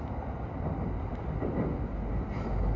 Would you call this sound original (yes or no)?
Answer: yes